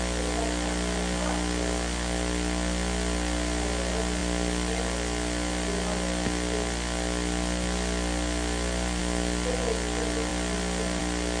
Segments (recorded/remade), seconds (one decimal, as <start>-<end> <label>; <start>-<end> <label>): 0.0-11.4 recorded